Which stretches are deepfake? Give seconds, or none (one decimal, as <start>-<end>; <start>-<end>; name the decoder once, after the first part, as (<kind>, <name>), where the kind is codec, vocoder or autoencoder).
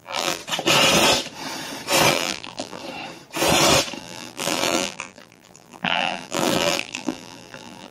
0.0-0.4 (vocoder, BigVGAN v2); 2.1-2.8; 4.0-7.9